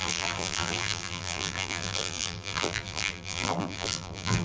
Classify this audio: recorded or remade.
remade